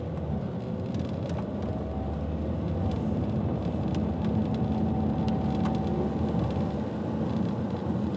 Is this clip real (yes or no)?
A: yes